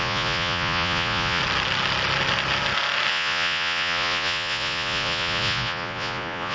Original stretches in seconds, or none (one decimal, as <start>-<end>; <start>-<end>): 1.4-3.1